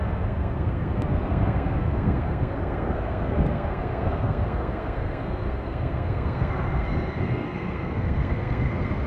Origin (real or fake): fake